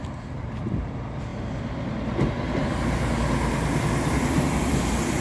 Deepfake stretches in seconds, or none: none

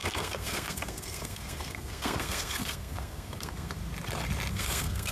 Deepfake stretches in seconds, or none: 0.0-3.8 (codec, SNAC); 4.5-5.1

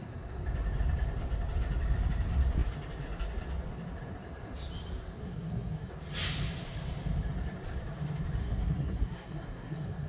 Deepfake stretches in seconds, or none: 5.2-5.9 (codec, SNAC); 8.4-10.1

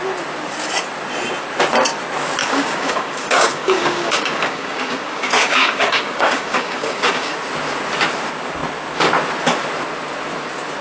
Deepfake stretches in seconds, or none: 2.4-7.4 (codec, DAC)